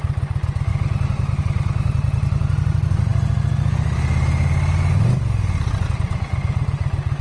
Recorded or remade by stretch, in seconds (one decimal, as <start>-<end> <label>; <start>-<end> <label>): 0.0-7.2 recorded

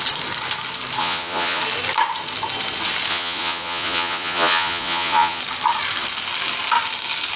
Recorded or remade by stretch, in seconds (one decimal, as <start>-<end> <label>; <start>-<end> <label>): 0.0-1.0 recorded; 1.0-1.6 remade; 1.6-3.1 recorded; 3.1-5.4 remade; 5.4-7.4 recorded

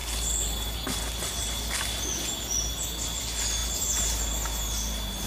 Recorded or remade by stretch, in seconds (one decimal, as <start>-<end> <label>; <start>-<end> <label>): 0.0-5.3 recorded

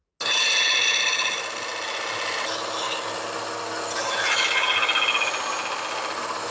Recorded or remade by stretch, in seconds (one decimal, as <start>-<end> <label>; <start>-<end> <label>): 0.0-6.5 recorded